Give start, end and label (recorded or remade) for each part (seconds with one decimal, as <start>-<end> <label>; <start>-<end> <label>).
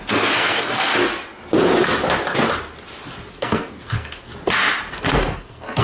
0.0-0.9 remade; 0.9-3.3 recorded; 3.3-4.3 remade; 4.3-4.9 recorded; 4.9-5.8 remade